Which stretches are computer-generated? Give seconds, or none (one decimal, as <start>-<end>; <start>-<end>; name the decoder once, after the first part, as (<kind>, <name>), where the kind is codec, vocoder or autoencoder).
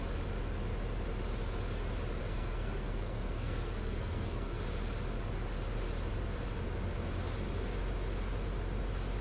2.2-4.6 (codec, SNAC)